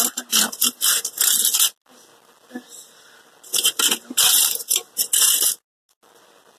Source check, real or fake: real